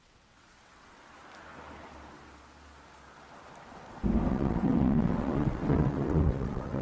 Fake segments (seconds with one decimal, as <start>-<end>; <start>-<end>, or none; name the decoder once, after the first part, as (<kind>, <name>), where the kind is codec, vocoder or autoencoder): 0.0-1.0 (vocoder, WaveNeXt); 4.3-6.8